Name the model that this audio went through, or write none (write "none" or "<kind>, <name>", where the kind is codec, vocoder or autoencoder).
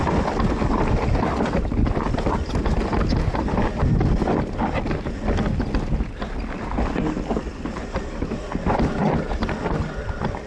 none